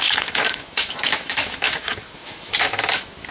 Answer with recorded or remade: remade